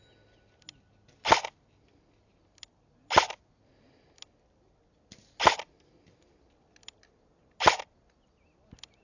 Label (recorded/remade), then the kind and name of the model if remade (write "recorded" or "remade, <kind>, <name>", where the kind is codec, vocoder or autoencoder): recorded